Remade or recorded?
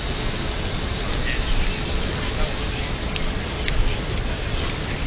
recorded